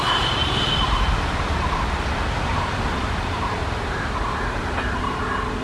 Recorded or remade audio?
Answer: recorded